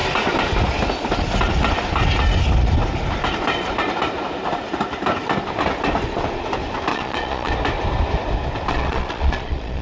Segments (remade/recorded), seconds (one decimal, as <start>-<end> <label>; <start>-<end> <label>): 0.0-6.9 recorded; 6.9-7.5 remade; 7.5-8.7 recorded; 8.7-9.8 remade